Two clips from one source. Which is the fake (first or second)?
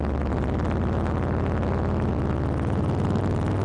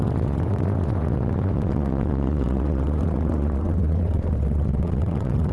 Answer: second